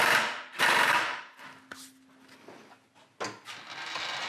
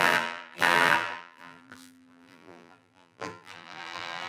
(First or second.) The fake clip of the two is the second